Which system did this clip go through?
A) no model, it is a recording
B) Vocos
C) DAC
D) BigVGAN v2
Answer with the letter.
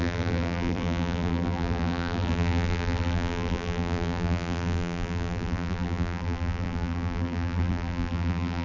D